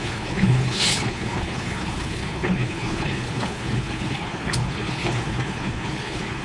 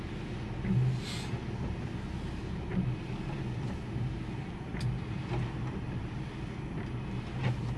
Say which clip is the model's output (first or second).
first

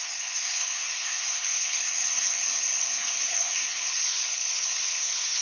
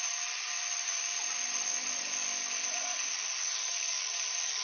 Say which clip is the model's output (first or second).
first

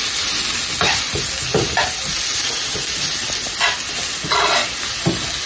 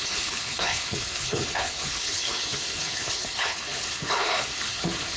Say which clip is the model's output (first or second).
second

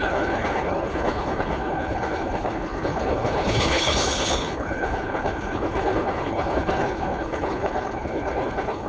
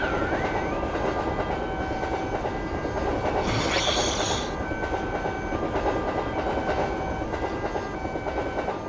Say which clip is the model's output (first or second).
first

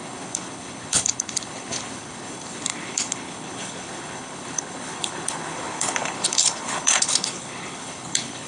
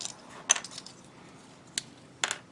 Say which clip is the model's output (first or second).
first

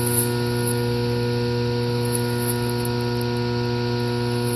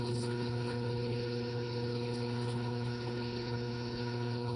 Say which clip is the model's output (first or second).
second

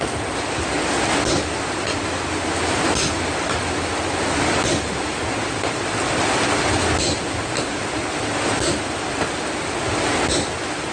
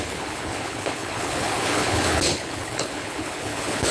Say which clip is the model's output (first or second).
second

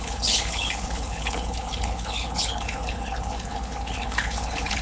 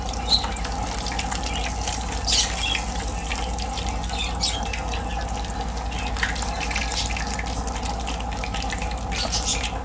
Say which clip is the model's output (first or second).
first